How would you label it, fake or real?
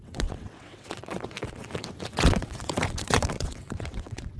fake